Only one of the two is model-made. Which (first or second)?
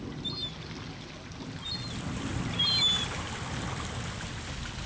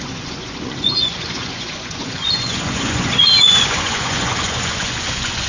second